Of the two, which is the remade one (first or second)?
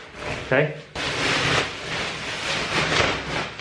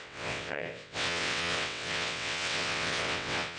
second